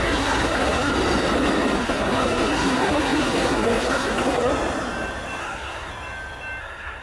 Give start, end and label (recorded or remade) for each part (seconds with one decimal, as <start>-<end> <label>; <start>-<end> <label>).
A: 0.0-0.9 remade; 0.9-1.8 recorded; 1.8-4.5 remade; 4.5-5.4 recorded; 5.4-5.9 remade; 5.9-6.6 recorded; 6.6-7.0 remade